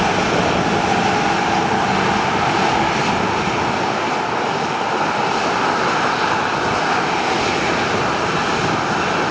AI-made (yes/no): no